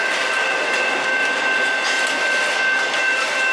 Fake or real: real